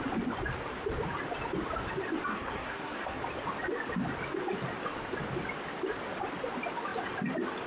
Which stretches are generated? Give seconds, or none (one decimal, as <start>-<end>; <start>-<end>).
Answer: 2.3-3.2